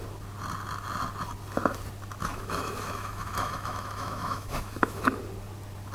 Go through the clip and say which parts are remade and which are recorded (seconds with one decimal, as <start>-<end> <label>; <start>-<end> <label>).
0.0-2.2 recorded; 2.2-5.2 remade; 5.2-5.9 recorded